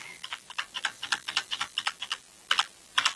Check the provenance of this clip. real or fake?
fake